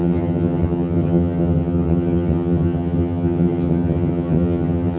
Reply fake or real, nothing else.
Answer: fake